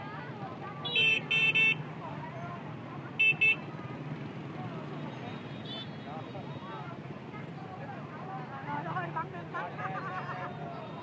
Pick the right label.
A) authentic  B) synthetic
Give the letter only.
A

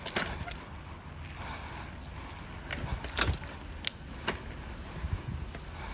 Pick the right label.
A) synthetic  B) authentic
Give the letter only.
B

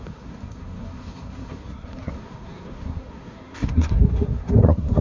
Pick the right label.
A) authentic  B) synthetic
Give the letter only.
B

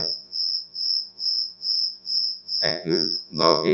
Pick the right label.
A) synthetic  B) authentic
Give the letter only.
A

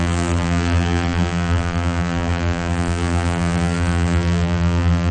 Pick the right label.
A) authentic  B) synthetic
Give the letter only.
B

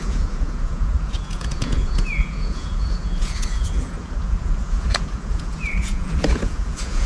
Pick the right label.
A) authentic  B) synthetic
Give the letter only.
B